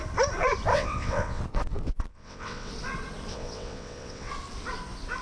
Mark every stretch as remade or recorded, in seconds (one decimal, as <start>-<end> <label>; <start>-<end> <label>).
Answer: 0.0-0.7 recorded; 0.7-1.4 remade; 1.4-2.1 recorded; 2.1-2.7 remade; 2.7-3.3 recorded; 3.3-4.3 remade; 4.3-5.2 recorded